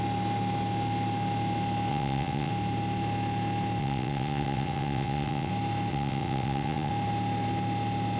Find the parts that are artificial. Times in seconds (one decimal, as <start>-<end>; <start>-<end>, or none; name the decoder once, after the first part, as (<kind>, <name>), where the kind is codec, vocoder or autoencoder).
1.9-2.5 (vocoder, WaveNeXt); 3.8-5.5; 5.9-6.9